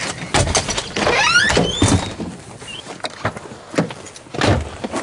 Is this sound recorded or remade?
recorded